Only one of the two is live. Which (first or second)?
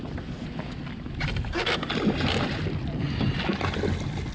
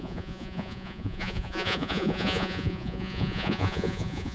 first